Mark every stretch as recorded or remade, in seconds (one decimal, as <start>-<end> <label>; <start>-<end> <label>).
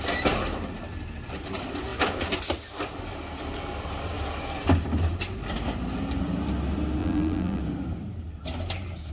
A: 0.0-7.0 recorded; 7.0-7.6 remade; 7.6-9.1 recorded